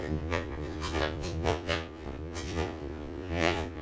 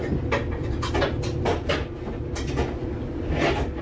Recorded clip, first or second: second